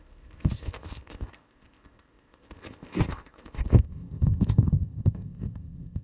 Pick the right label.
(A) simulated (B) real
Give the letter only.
A